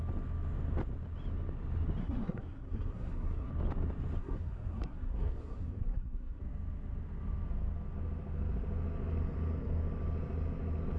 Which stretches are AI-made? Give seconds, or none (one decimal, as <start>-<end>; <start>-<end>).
2.0-3.5; 4.2-6.4